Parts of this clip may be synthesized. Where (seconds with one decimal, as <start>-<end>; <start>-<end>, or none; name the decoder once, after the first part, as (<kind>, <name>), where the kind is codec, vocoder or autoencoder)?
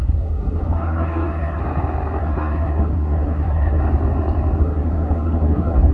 0.0-1.6 (codec, SNAC); 2.2-3.8; 4.6-5.9